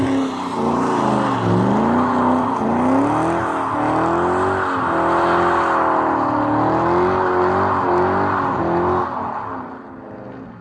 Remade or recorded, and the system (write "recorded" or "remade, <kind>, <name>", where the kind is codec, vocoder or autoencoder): recorded